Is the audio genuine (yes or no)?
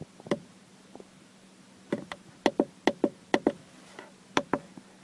yes